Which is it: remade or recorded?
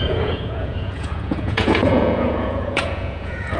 remade